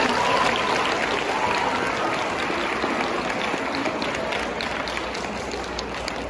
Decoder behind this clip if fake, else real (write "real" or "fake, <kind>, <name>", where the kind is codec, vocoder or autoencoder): real